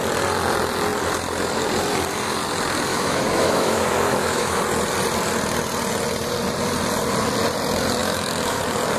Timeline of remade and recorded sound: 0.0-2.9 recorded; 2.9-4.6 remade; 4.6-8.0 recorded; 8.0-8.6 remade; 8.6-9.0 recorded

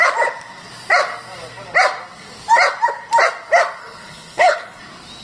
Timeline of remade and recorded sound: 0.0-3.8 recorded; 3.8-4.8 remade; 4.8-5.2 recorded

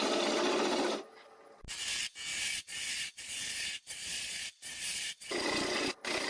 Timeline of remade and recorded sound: 0.0-2.3 recorded; 2.3-5.3 remade; 5.3-6.3 recorded

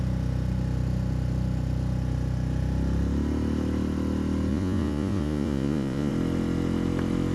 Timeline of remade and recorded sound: 0.0-4.5 recorded; 4.5-6.1 remade; 6.1-7.3 recorded

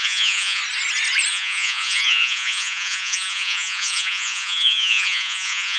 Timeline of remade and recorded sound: 0.0-0.6 remade; 0.6-1.3 recorded; 1.3-5.8 remade

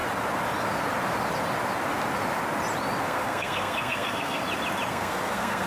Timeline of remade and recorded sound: 0.0-3.0 recorded; 3.0-4.4 remade; 4.4-4.9 recorded; 4.9-5.7 remade